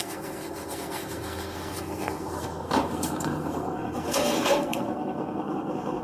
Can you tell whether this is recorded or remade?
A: remade